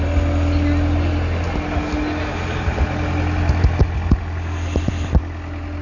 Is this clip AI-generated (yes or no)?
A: no